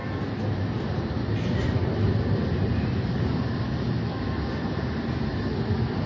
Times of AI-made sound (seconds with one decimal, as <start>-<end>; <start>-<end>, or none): none